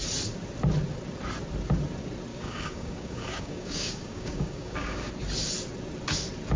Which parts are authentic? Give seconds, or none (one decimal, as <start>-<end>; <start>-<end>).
0.0-2.3; 5.1-6.6